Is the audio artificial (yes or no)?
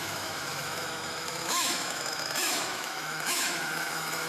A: yes